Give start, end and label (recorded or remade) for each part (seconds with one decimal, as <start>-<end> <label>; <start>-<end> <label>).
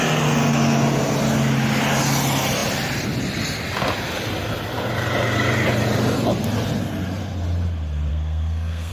0.0-8.1 recorded; 8.1-8.9 remade